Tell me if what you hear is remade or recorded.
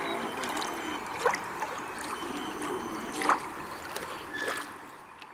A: recorded